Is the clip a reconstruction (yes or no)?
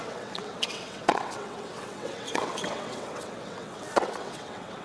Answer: yes